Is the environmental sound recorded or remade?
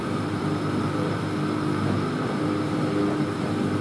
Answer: recorded